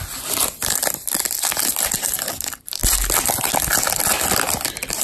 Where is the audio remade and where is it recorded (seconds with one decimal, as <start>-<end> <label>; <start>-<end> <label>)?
0.0-5.0 recorded